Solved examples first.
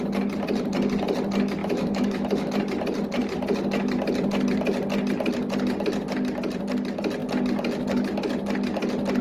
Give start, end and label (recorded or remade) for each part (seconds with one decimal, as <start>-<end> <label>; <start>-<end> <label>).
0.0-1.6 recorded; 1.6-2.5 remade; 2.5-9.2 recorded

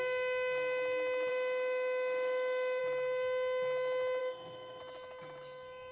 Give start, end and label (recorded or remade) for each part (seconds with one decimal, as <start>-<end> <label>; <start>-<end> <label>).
0.0-1.3 recorded; 1.3-2.8 remade; 2.8-4.2 recorded; 4.2-4.8 remade; 4.8-5.9 recorded

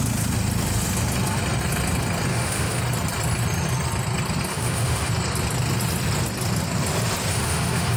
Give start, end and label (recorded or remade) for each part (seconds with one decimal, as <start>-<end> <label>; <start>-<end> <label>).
0.0-2.3 recorded; 2.3-2.8 remade; 2.8-4.5 recorded; 4.5-5.1 remade; 5.1-7.3 recorded; 7.3-8.0 remade

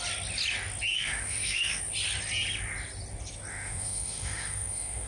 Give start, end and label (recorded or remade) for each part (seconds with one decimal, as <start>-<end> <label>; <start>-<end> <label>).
0.0-0.9 recorded; 0.9-1.8 remade; 1.8-3.5 recorded; 3.5-5.1 remade

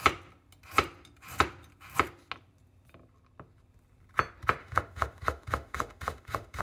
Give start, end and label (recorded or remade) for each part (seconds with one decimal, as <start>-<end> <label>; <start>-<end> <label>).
0.0-4.6 recorded; 4.6-6.6 remade